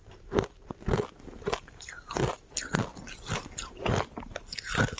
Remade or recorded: recorded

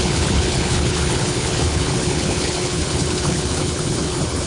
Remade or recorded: remade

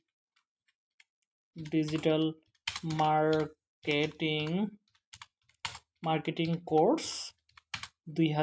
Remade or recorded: recorded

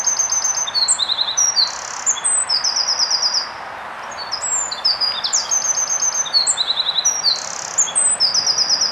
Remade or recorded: recorded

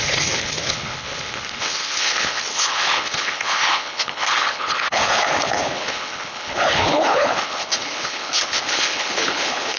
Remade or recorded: remade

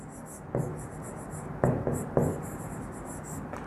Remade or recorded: recorded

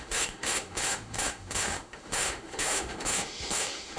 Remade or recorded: remade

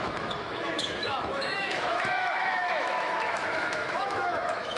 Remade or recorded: remade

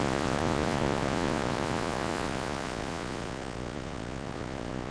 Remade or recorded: remade